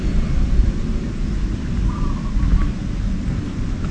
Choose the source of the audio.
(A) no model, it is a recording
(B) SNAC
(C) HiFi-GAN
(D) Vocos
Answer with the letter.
A